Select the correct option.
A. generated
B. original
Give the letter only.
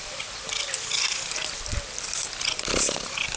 B